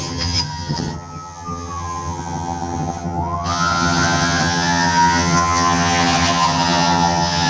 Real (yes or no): no